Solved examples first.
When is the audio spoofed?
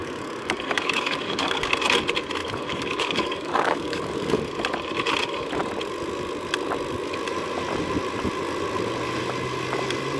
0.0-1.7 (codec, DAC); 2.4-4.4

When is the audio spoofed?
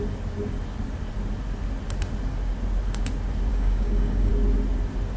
3.5-4.3 (codec, DAC)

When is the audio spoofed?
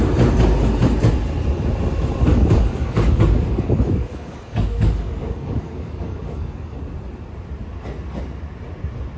2.3-6.8 (codec, DAC)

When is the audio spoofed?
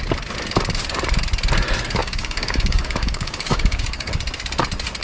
2.0-4.1 (codec, DAC)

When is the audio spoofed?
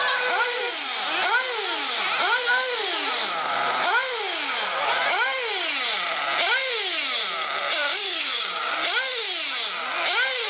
7.9-8.7 (codec, DAC)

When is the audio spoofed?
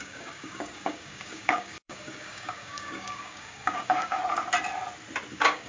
0.0-4.2 (codec, DAC); 5.3-5.7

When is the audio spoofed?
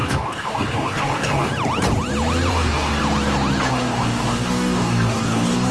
0.0-1.5 (codec, DAC); 2.5-3.0; 3.7-5.7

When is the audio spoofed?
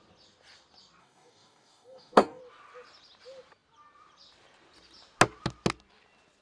1.0-2.4 (codec, DAC)